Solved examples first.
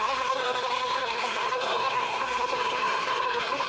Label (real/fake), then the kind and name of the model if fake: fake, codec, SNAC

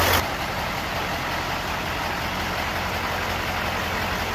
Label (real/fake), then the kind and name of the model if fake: real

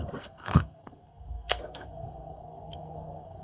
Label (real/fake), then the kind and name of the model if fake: fake, codec, SNAC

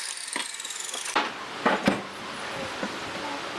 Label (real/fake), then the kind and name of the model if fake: real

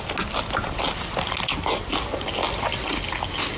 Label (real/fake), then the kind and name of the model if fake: real